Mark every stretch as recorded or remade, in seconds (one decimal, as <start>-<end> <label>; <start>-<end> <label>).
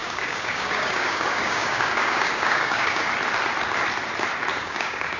0.0-3.1 remade; 3.1-4.5 recorded; 4.5-5.2 remade